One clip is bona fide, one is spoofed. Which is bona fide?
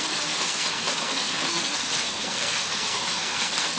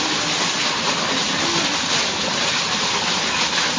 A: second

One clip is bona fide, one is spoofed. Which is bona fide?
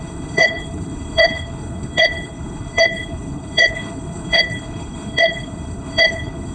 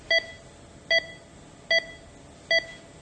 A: second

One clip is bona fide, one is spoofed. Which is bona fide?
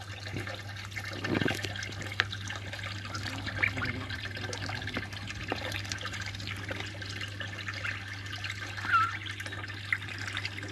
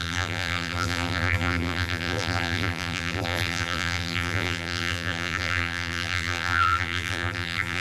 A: first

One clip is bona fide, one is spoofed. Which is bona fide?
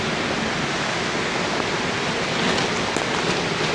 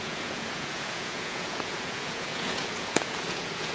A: first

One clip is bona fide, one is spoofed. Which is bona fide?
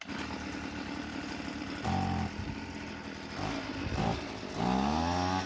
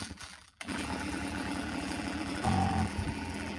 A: first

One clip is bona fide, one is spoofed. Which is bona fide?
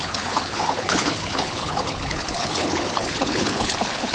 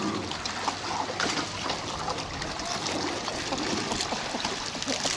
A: second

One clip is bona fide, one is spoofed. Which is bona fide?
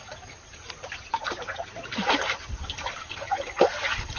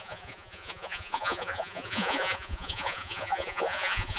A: first